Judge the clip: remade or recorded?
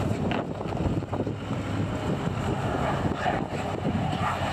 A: recorded